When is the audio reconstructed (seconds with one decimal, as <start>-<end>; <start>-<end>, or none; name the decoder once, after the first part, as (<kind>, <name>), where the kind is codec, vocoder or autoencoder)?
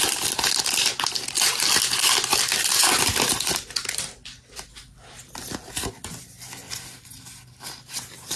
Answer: none